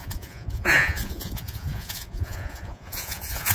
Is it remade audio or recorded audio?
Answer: remade